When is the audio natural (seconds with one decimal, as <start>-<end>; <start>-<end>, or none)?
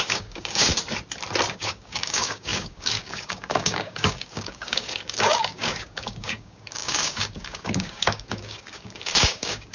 0.7-1.5